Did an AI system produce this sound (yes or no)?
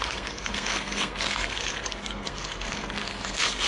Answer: yes